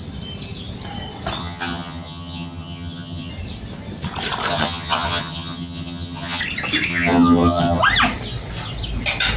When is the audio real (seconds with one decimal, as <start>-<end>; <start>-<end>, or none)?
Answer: 0.0-1.4; 3.3-4.5; 6.4-6.9; 7.8-9.4